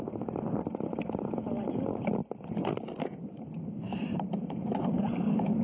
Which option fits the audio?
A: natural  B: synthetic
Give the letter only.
A